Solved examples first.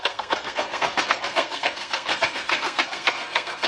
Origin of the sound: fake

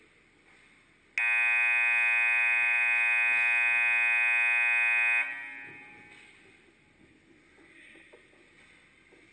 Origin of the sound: real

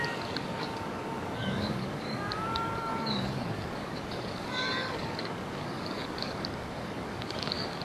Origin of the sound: fake